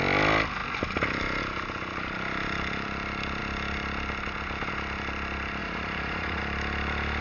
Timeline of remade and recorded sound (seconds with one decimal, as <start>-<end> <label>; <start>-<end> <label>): 0.0-5.6 recorded; 5.6-6.4 remade; 6.4-7.2 recorded